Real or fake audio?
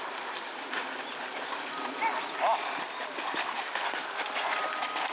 fake